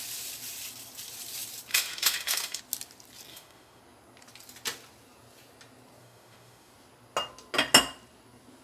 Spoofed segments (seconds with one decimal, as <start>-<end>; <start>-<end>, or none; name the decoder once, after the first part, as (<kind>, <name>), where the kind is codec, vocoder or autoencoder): 1.7-2.6 (autoencoder, DAC-VAE); 3.3-3.8; 6.0-6.7